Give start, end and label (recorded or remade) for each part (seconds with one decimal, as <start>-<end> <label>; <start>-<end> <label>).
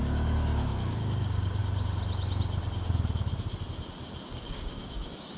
0.0-1.6 remade; 1.6-4.3 recorded; 4.3-5.4 remade